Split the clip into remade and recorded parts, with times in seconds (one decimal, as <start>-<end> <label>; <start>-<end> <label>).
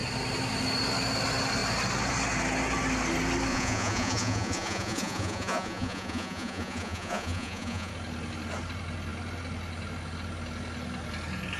0.0-3.5 recorded; 3.5-7.9 remade; 7.9-11.6 recorded